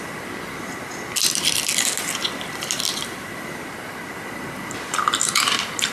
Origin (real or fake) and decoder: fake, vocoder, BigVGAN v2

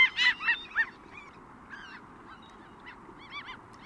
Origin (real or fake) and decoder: real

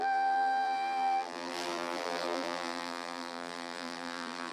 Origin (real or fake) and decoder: fake, vocoder, BigVGAN v2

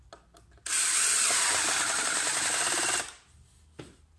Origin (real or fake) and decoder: real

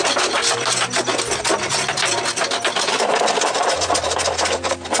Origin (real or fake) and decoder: real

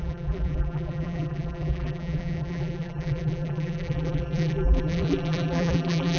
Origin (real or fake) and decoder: fake, vocoder, BigVGAN v2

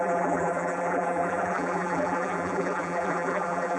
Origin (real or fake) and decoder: fake, vocoder, BigVGAN v2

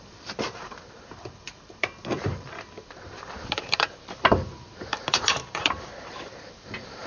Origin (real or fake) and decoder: fake, vocoder, BigVGAN v2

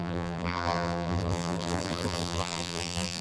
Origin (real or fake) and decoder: fake, vocoder, BigVGAN v2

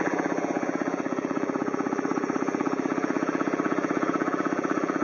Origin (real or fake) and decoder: fake, vocoder, BigVGAN v2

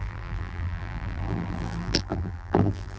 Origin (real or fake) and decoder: fake, vocoder, BigVGAN v2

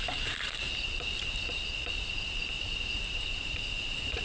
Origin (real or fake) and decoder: fake, vocoder, BigVGAN v2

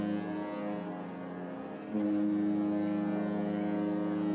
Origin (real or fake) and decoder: real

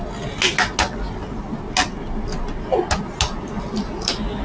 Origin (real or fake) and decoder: real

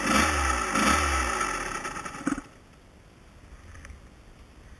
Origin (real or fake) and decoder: real